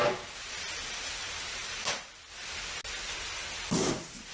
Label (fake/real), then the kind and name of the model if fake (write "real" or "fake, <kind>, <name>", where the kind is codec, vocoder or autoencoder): real